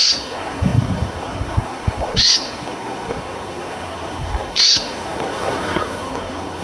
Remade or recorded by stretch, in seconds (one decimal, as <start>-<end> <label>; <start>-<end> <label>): 0.0-6.6 remade